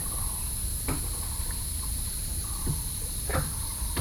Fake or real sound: real